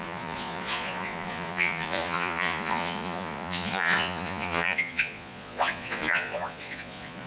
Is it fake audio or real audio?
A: fake